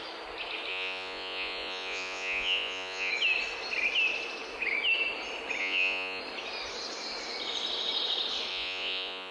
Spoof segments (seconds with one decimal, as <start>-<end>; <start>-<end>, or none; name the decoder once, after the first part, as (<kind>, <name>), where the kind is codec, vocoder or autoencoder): 0.7-3.1 (vocoder, Vocos); 5.6-6.2; 8.5-9.3